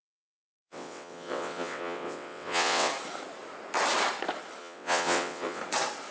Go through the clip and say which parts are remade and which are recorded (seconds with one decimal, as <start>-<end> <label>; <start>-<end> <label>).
0.0-2.9 remade; 2.9-4.6 recorded; 4.6-5.6 remade; 5.6-6.1 recorded